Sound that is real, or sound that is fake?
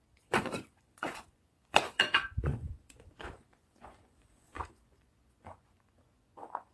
fake